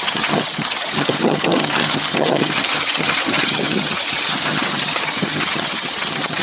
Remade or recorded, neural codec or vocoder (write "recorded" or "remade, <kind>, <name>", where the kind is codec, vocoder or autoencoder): remade, vocoder, HiFi-GAN